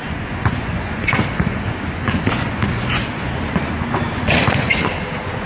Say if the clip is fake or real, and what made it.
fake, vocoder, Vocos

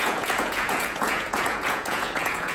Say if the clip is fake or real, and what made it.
fake, vocoder, Vocos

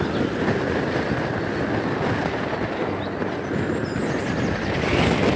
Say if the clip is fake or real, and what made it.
real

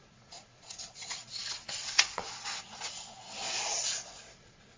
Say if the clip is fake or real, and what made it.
fake, vocoder, Vocos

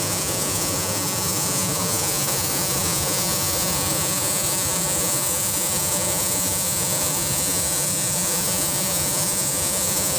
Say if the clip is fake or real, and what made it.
fake, vocoder, Vocos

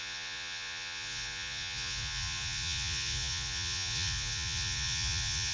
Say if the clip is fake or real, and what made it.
fake, vocoder, Vocos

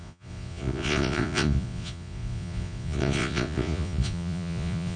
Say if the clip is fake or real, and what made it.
fake, vocoder, Vocos